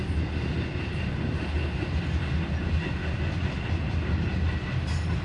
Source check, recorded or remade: recorded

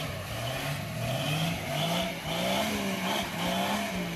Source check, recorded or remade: recorded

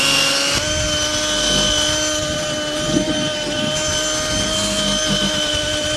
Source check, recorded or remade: recorded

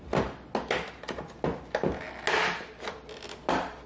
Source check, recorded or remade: recorded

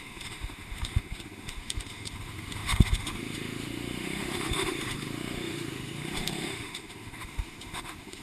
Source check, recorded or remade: remade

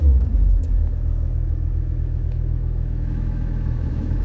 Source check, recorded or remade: remade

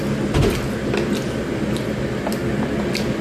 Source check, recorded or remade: recorded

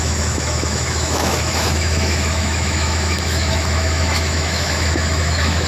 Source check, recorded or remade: remade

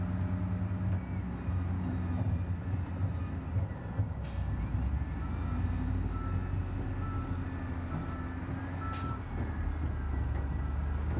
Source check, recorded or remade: recorded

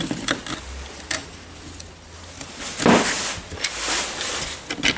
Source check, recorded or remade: recorded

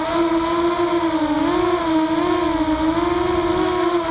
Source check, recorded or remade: recorded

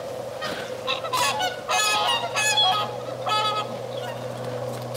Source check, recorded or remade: recorded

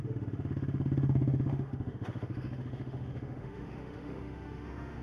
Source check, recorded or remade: remade